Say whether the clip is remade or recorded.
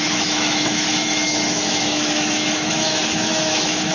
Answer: remade